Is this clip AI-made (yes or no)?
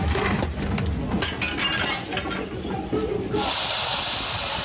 no